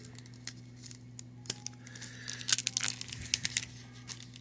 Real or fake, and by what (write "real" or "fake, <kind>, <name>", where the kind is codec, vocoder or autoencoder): real